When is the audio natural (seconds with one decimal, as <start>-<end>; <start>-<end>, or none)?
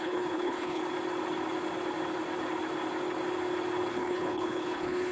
0.8-3.9